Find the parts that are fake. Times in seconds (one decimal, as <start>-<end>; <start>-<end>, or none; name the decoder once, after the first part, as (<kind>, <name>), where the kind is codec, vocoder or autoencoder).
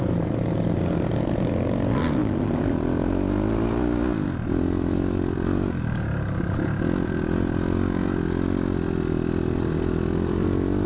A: none